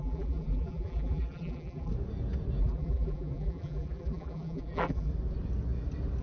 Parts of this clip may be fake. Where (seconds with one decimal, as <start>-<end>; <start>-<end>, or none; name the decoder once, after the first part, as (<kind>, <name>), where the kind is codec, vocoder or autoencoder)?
0.0-1.9 (vocoder, BigVGAN v2); 2.6-5.1